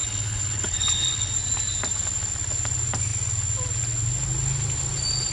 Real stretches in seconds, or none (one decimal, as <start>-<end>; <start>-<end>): 1.3-5.3